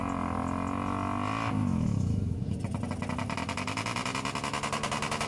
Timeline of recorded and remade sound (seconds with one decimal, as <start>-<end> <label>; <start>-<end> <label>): 0.0-1.6 recorded; 1.6-2.5 remade; 2.5-5.3 recorded